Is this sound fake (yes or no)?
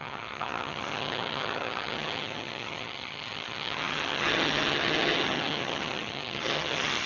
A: yes